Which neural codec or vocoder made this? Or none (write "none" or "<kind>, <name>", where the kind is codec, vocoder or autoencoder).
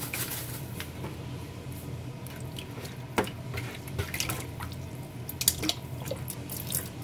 none